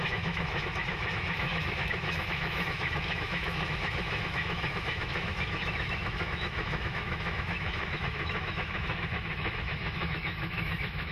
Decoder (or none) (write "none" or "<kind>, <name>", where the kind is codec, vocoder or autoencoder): autoencoder, DAC-VAE